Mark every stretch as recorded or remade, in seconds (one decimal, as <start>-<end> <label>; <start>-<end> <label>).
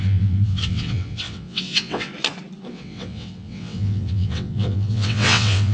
0.0-2.1 remade; 2.1-2.7 recorded; 2.7-5.7 remade